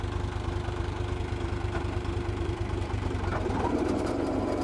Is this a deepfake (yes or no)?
yes